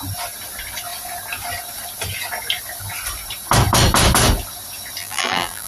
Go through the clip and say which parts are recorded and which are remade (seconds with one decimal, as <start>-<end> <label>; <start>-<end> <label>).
0.0-5.0 recorded; 5.0-5.7 remade